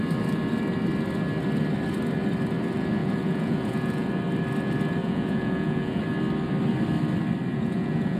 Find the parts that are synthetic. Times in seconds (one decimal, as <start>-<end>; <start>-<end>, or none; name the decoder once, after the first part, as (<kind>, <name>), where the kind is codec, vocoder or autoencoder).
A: 3.0-4.1 (vocoder, Vocos); 5.0-6.0; 7.5-8.2